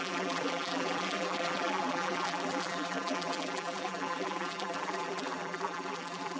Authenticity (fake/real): fake